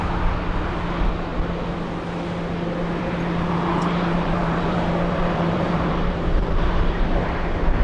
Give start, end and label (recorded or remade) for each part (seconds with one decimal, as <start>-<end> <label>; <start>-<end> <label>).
0.0-3.7 recorded; 3.7-7.1 remade; 7.1-7.8 recorded